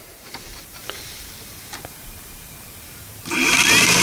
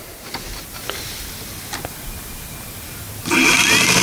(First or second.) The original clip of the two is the second